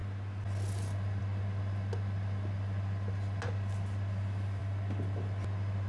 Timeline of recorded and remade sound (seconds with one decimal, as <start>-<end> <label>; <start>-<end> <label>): 0.0-5.9 recorded